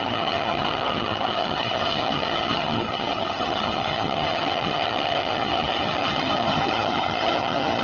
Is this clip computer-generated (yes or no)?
yes